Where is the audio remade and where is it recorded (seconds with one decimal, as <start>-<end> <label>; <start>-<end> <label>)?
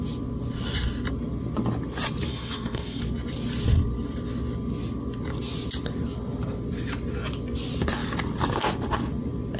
0.0-2.3 recorded; 2.3-3.0 remade; 3.0-9.6 recorded